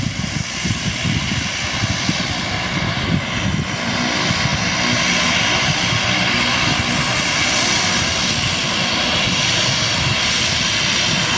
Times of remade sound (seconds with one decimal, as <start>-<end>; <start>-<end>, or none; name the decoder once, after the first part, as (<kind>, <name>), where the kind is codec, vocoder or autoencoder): none